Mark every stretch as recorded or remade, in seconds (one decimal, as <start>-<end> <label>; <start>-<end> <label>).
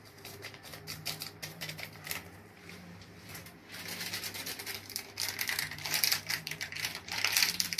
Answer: 0.0-0.7 remade; 0.7-1.4 recorded; 1.4-3.4 remade; 3.4-5.6 recorded; 5.6-7.8 remade